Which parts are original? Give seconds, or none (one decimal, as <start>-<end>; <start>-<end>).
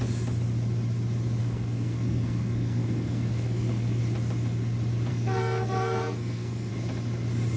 0.0-1.4; 4.0-5.1; 6.7-7.6